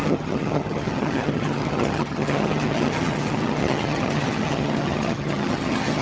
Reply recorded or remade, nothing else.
remade